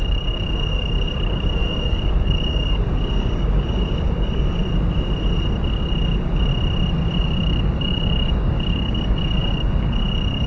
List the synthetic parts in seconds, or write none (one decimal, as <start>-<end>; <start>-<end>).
0.0-4.6; 5.7-6.5; 7.2-10.5